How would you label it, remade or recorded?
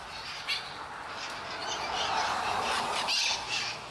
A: recorded